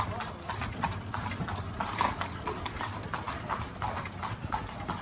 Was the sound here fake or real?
real